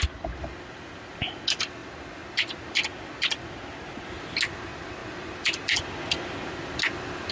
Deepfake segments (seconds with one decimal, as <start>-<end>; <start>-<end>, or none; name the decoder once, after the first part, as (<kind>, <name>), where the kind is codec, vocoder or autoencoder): none